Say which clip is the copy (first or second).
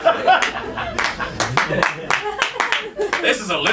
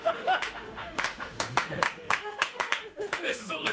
second